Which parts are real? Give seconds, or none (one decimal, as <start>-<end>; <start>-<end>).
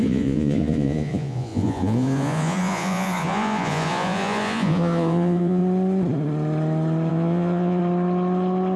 5.6-7.1; 7.8-8.8